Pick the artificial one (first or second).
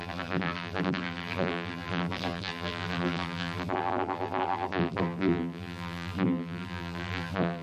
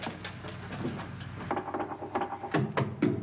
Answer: first